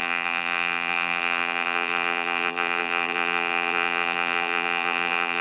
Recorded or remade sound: remade